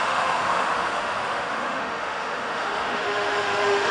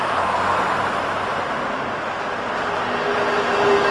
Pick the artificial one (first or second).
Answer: first